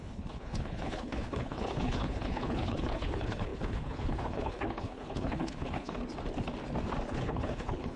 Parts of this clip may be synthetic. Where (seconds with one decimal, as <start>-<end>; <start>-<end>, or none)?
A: 0.0-6.0; 7.1-8.0